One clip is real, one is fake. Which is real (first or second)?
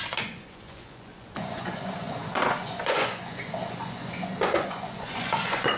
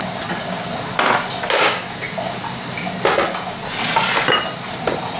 second